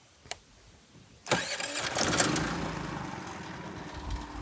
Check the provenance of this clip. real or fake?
real